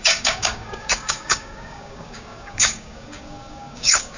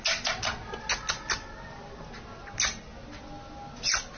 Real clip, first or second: second